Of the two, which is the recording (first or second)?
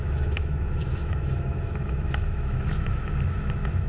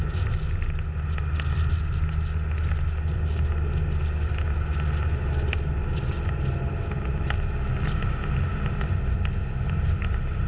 second